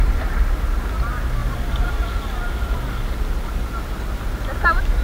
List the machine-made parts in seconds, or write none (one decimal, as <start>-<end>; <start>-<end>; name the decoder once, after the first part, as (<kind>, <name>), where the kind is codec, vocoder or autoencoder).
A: 1.4-2.0 (vocoder, BigVGAN v2)